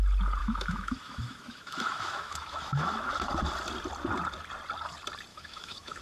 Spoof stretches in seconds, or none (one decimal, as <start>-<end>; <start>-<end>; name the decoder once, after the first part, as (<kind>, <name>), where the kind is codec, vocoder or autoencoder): 0.4-3.1 (autoencoder, DAC-VAE); 5.3-6.0